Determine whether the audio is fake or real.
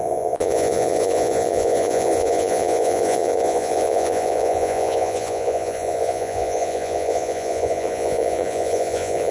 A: fake